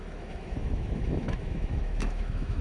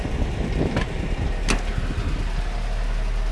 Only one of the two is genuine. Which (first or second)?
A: second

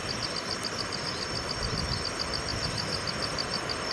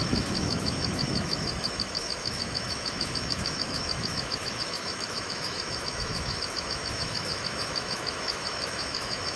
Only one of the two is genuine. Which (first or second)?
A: first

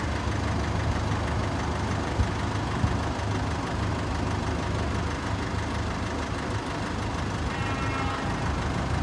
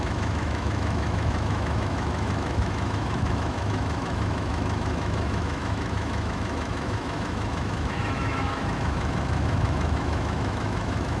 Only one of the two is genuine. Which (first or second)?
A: first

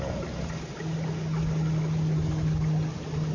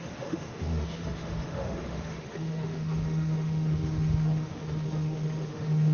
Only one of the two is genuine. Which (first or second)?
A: first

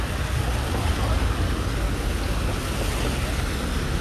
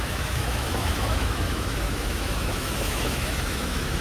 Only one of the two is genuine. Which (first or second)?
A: first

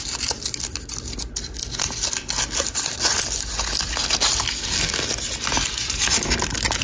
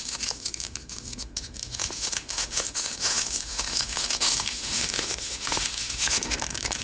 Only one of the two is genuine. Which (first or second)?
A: first